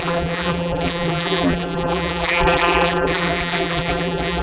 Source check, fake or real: fake